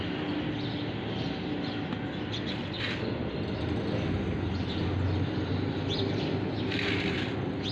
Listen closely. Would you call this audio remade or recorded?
recorded